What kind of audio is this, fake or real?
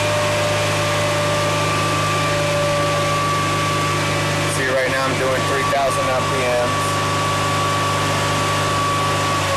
real